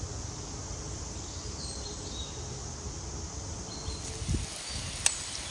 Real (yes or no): yes